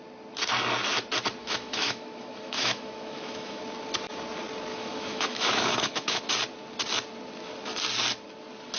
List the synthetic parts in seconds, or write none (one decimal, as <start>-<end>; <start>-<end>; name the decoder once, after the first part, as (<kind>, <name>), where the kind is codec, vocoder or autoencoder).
1.4-3.6 (autoencoder, DAC-VAE); 4.7-6.2